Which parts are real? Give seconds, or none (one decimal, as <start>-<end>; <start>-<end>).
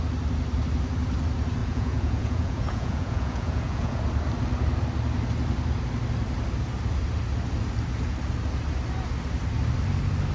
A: 0.0-1.6; 4.0-10.3